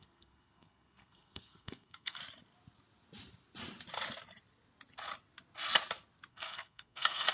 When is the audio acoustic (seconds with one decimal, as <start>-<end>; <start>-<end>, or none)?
2.2-6.3